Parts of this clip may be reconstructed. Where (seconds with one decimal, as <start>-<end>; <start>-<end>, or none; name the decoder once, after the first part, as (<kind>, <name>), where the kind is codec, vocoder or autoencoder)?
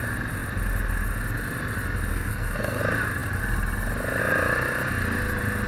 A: 2.1-2.8 (codec, SNAC)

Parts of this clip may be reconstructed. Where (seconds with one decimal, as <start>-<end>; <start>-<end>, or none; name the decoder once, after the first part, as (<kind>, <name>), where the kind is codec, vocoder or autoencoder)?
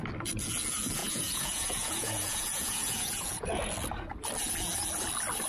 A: 1.0-3.6 (vocoder, Vocos)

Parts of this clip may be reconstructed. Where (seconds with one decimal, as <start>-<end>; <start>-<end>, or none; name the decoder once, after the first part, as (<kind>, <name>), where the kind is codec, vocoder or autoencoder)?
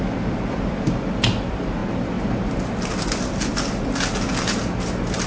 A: none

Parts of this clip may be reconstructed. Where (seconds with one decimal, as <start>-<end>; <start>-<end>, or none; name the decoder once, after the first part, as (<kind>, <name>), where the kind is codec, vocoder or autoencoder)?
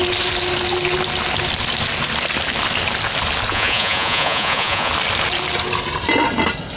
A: 3.5-4.9 (vocoder, Vocos)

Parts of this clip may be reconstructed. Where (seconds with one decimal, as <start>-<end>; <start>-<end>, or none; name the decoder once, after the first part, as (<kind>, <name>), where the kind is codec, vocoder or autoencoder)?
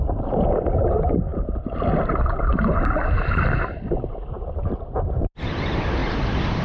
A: 6.0-6.6 (vocoder, BigVGAN v2)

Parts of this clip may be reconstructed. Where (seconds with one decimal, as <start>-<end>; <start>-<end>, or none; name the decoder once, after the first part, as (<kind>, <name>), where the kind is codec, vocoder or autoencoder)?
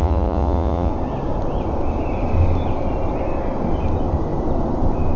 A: 0.0-0.9 (vocoder, Vocos)